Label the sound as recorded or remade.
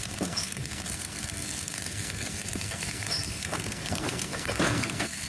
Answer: remade